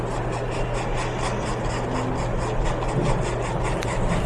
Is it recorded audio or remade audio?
recorded